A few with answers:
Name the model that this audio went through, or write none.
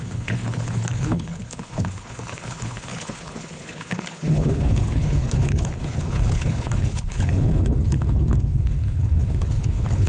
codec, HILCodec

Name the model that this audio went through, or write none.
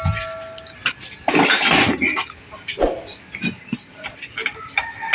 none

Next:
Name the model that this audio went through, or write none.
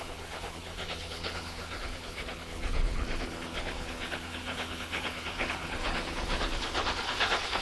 codec, HILCodec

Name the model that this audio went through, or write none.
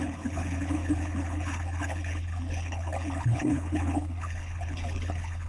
codec, HILCodec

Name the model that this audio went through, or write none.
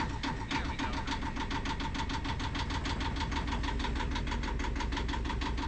none